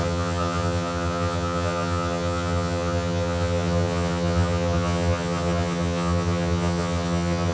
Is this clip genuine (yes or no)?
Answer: no